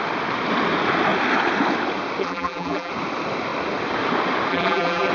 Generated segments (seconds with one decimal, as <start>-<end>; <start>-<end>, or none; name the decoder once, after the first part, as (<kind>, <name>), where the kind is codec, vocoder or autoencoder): 2.2-2.9 (vocoder, BigVGAN v2); 4.5-5.1